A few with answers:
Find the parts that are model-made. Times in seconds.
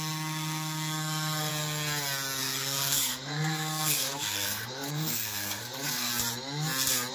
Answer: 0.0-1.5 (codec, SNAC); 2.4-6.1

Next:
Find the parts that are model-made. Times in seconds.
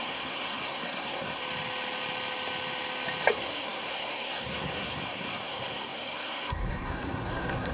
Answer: 0.0-1.4 (codec, SNAC); 3.3-7.7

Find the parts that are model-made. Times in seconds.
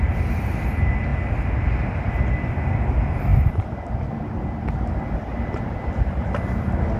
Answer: none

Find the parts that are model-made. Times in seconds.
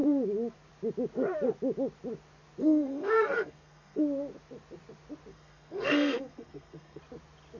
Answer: 2.6-4.0 (codec, SNAC); 5.3-7.0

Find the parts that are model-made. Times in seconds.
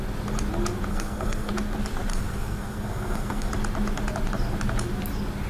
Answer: 0.9-1.5 (codec, SNAC); 2.1-3.5